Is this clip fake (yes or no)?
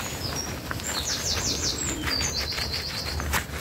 no